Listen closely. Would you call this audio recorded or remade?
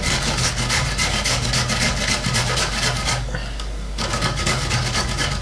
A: remade